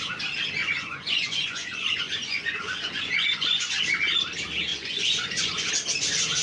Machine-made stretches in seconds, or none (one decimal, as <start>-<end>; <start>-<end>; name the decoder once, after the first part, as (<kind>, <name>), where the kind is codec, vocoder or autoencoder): 0.6-3.8 (vocoder, Vocos); 4.7-5.7